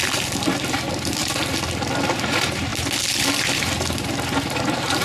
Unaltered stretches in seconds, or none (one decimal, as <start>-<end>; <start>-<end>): 0.0-5.0